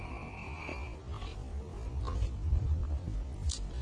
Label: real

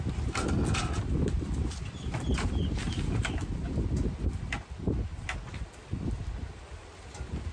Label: real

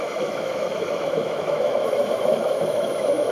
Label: fake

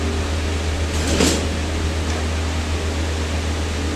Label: real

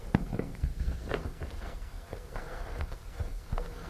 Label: fake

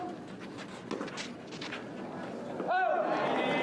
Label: real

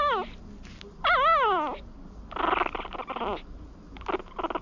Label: real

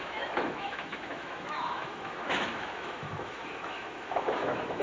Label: fake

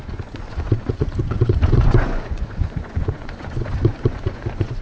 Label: fake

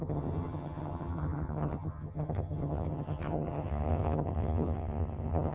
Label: fake